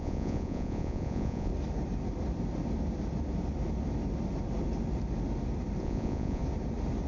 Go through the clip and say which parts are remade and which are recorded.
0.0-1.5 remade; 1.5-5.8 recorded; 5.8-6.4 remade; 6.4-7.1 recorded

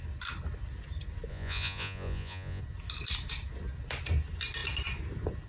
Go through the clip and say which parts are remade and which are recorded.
0.0-1.3 recorded; 1.3-2.6 remade; 2.6-5.5 recorded

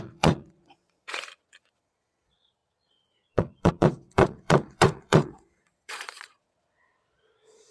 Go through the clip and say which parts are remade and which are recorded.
0.0-7.7 remade

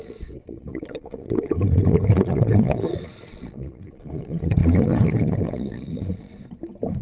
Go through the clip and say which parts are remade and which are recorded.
0.0-6.3 remade; 6.3-7.0 recorded

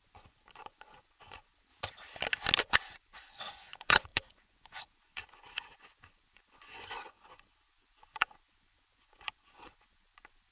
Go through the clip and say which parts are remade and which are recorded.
0.0-1.7 remade; 1.7-2.6 recorded; 2.6-10.5 remade

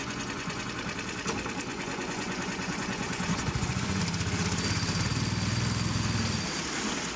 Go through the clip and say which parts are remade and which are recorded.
0.0-0.7 remade; 0.7-1.7 recorded; 1.7-4.0 remade; 4.0-7.2 recorded

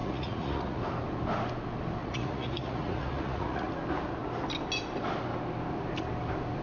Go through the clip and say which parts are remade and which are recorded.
0.0-0.8 remade; 0.8-2.0 recorded; 2.0-3.7 remade; 3.7-6.6 recorded